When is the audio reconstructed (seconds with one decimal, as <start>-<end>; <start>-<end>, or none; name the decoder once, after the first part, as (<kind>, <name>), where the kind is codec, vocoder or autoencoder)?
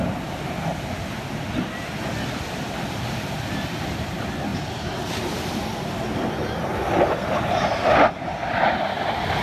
4.5-5.1 (vocoder, BigVGAN v2)